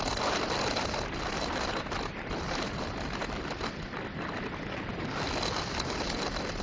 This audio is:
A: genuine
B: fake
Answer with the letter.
A